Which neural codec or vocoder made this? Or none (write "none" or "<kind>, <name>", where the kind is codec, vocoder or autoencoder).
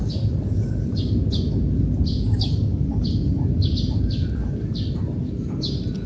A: none